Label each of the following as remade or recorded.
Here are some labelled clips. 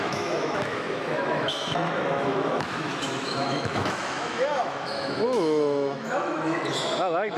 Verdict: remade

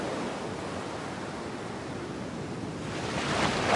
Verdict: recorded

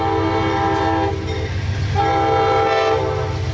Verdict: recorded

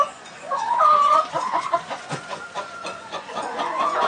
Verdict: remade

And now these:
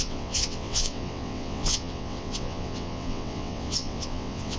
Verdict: remade